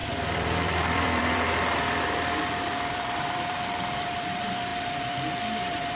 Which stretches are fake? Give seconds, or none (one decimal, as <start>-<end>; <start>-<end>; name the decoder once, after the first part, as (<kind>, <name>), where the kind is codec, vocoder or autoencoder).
0.0-4.7 (vocoder, BigVGAN v2); 5.6-6.0